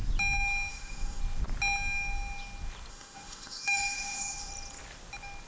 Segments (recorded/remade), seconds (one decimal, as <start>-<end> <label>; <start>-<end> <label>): 0.0-0.7 recorded; 0.7-1.2 remade; 1.2-2.9 recorded; 2.9-4.5 remade; 4.5-5.5 recorded